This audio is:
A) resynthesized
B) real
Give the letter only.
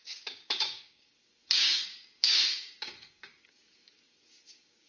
A